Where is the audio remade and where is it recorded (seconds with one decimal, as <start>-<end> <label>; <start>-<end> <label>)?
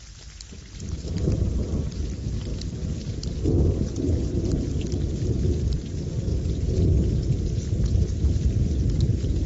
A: 0.0-9.5 recorded